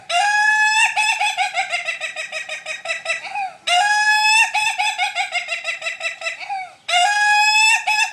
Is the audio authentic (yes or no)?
yes